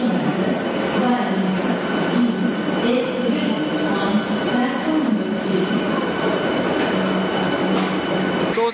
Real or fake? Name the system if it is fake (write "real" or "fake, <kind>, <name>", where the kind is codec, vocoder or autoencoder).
real